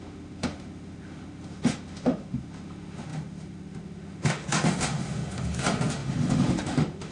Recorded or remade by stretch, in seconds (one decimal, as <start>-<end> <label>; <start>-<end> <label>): 0.0-7.1 remade